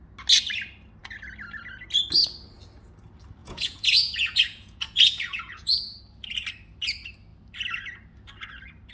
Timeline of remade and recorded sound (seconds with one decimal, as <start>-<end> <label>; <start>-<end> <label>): 0.0-3.4 recorded; 3.4-6.0 remade; 6.0-8.9 recorded